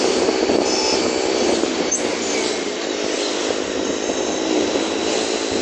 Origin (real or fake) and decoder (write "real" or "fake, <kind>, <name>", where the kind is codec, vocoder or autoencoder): real